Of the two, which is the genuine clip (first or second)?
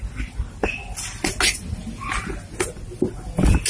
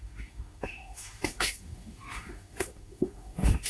first